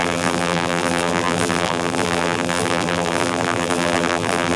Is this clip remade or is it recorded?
remade